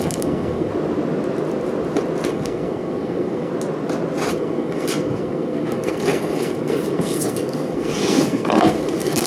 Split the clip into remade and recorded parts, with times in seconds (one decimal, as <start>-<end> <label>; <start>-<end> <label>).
0.0-0.7 remade; 0.7-2.3 recorded; 2.3-3.5 remade; 3.5-4.3 recorded; 4.3-9.3 remade